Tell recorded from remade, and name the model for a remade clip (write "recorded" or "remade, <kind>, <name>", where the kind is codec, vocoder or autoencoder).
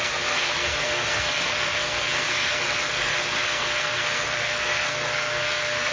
remade, codec, SNAC